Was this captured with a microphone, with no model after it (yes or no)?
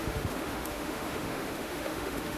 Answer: no